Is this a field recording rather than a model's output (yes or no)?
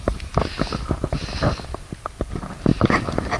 yes